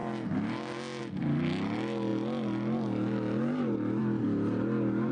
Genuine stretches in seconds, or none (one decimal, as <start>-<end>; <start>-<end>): 0.0-5.1